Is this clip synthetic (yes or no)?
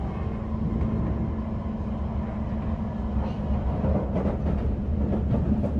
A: no